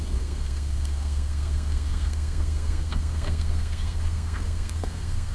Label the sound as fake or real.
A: fake